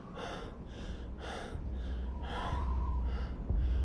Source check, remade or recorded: recorded